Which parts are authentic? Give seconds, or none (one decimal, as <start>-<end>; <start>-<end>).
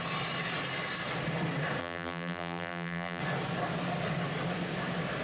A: 0.0-1.8; 3.2-5.2